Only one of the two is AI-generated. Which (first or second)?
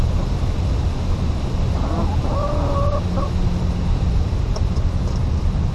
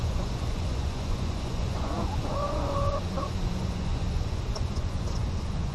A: second